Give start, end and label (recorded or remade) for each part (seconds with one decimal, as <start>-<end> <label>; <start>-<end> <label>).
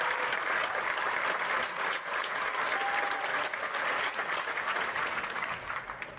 0.0-1.6 recorded; 1.6-2.6 remade; 2.6-3.3 recorded; 3.3-5.5 remade; 5.5-6.2 recorded